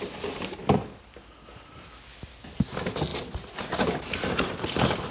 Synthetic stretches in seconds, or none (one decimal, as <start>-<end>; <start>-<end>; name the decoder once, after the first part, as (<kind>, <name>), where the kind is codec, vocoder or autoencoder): none